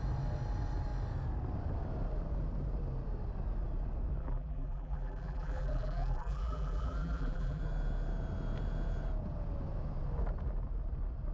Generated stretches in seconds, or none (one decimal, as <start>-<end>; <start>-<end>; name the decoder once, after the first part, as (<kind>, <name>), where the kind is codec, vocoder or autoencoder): 4.2-7.6 (vocoder, BigVGAN v2)

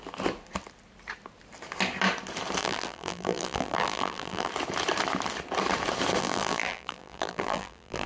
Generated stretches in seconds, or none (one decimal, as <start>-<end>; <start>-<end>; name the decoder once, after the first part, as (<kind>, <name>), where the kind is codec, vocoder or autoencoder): 2.6-4.5 (vocoder, BigVGAN v2); 6.2-8.1

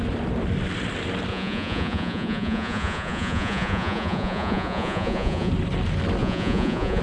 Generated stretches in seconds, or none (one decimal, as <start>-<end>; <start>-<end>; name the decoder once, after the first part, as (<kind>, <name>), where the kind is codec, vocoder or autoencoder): 1.3-5.5 (vocoder, Vocos); 6.2-7.0